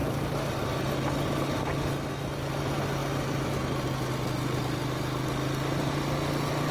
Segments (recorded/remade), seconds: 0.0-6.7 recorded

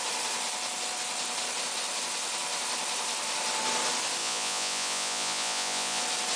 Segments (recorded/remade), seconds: 0.0-4.2 recorded; 4.2-6.0 remade; 6.0-6.4 recorded

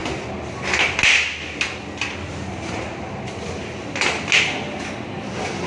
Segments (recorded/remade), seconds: 0.0-5.7 recorded

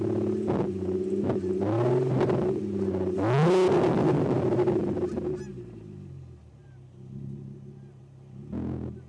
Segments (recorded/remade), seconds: 0.0-9.1 recorded

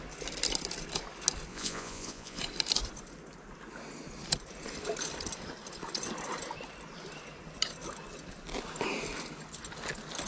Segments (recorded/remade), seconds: 0.0-1.5 recorded; 1.5-2.4 remade; 2.4-10.3 recorded

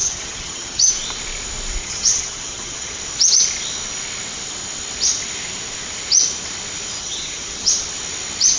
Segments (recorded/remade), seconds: 0.0-0.9 remade; 0.9-1.8 recorded; 1.8-3.0 remade; 3.0-7.0 recorded; 7.0-7.7 remade; 7.7-8.6 recorded